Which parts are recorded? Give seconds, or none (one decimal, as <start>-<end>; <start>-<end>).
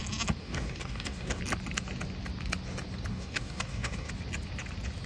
0.0-0.4; 1.4-3.1; 4.1-5.1